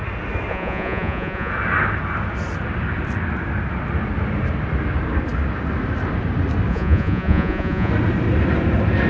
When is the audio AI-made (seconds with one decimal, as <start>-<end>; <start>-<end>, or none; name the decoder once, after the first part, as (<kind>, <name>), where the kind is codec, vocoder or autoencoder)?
0.5-1.5 (vocoder, Vocos); 6.7-7.9